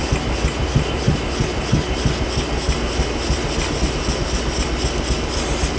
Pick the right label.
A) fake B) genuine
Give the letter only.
B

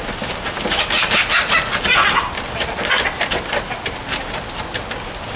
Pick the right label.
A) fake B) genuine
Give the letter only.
B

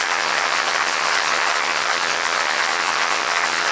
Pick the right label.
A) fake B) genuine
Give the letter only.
A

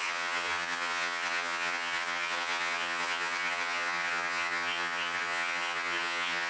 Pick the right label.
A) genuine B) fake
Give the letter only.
B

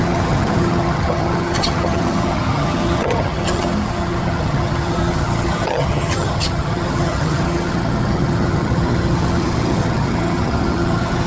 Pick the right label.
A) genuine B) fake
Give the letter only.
B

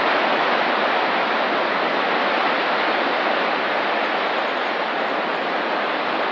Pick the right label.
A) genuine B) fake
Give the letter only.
A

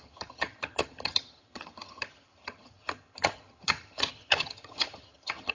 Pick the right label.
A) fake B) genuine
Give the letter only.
A